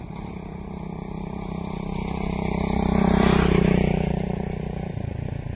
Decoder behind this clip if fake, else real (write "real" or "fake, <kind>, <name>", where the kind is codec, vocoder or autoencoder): fake, vocoder, BigVGAN v2